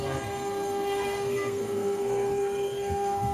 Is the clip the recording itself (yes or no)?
no